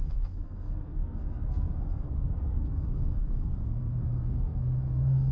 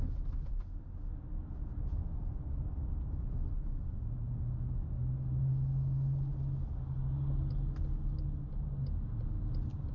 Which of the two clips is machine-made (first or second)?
first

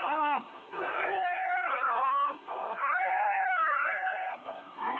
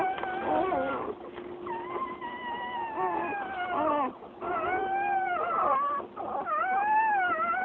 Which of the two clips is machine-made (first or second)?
first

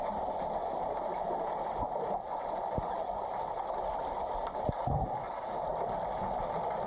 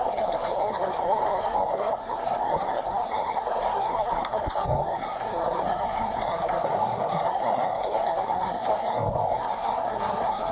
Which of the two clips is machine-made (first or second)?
second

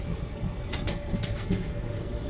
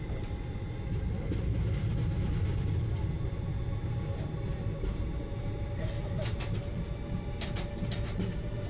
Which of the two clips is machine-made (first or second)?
first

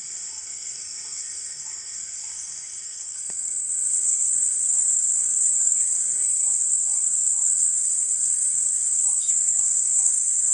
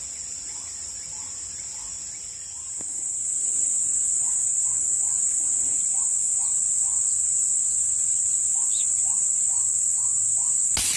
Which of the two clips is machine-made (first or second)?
first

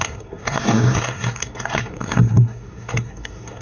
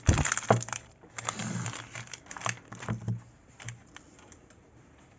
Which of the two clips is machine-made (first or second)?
first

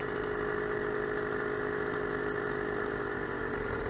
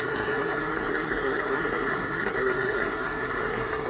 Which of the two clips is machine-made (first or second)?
second